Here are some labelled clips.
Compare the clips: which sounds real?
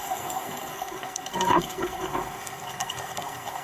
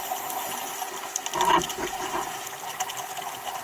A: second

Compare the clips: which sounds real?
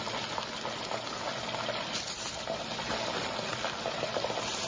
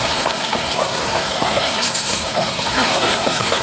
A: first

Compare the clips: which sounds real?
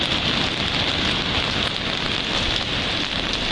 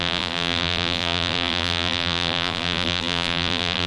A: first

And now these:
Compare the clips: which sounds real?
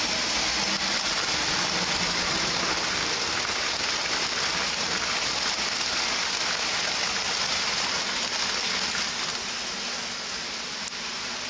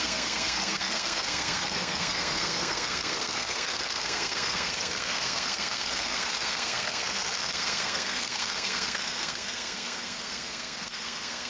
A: first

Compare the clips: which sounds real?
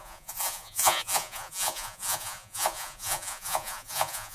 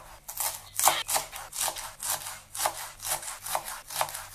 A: second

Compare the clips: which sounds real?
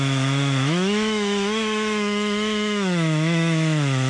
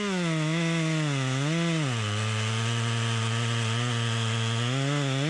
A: second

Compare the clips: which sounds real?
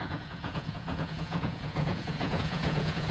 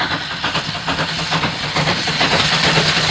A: second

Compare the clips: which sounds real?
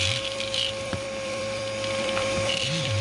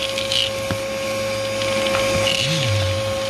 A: second